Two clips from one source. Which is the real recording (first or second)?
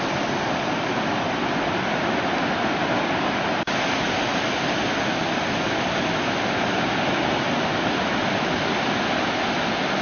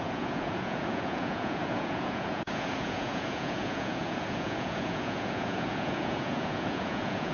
first